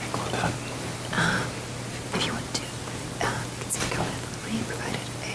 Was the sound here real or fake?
real